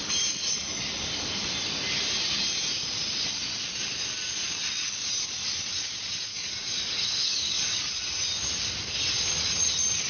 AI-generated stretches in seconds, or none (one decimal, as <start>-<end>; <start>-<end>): 6.3-7.9